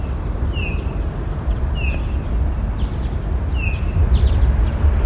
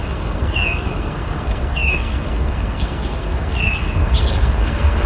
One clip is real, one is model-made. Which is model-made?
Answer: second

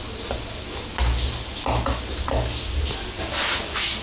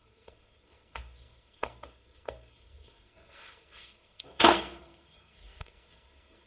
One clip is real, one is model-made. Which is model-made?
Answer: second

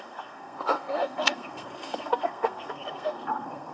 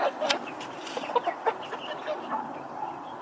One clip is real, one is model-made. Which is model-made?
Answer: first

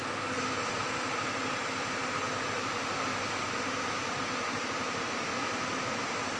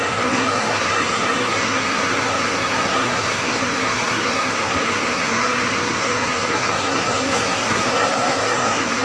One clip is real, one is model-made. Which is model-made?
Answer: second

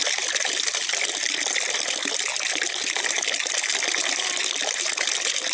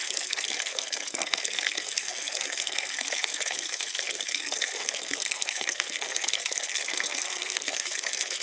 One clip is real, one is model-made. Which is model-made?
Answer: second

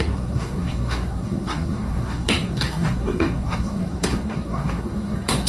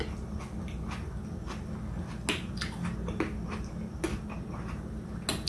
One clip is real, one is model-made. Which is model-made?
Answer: first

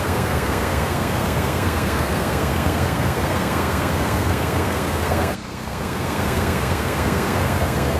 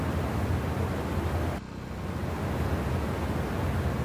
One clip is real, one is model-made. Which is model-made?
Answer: first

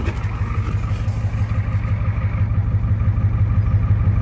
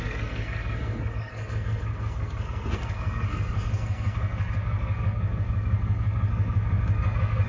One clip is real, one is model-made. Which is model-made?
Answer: second